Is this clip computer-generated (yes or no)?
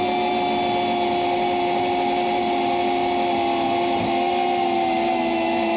no